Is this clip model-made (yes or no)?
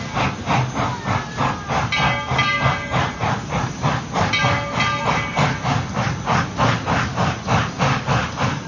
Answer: no